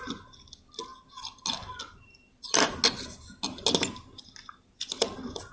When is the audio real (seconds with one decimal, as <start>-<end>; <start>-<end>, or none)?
0.0-5.5